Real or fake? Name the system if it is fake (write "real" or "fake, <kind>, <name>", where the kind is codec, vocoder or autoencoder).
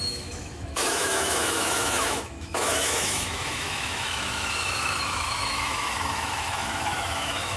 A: fake, autoencoder, DAC-VAE